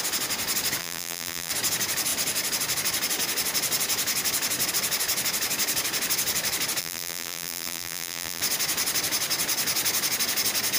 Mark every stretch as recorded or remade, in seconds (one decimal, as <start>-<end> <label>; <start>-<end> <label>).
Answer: 0.0-0.8 recorded; 0.8-1.5 remade; 1.5-6.8 recorded; 6.8-8.4 remade; 8.4-10.8 recorded